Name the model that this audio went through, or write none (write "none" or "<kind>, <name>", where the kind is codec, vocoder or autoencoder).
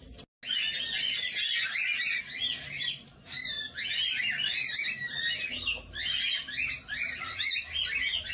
none